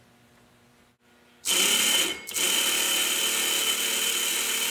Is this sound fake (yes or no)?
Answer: no